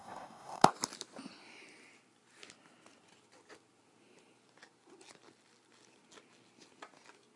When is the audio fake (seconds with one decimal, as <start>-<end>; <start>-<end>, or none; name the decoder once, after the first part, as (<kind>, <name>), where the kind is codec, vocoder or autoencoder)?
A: 0.0-0.7 (codec, DAC)